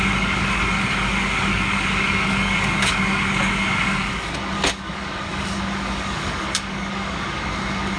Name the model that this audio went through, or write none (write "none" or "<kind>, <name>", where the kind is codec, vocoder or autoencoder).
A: codec, DAC